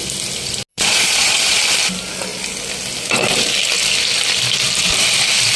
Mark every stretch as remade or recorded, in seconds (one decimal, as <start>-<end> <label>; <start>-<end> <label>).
0.0-0.7 recorded; 0.7-1.6 remade; 1.6-5.6 recorded